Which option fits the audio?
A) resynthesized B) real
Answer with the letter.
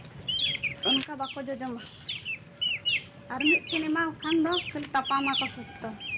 B